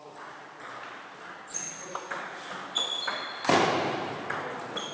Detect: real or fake real